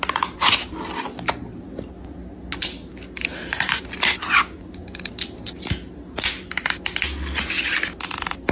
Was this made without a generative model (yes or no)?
yes